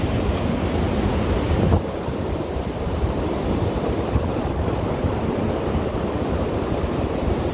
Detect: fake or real fake